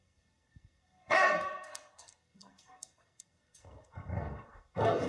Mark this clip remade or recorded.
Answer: remade